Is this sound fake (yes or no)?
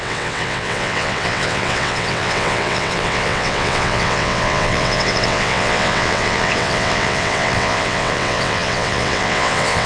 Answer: yes